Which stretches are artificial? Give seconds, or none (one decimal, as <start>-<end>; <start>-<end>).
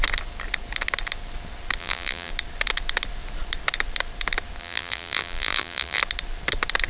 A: 1.8-2.3; 4.6-6.0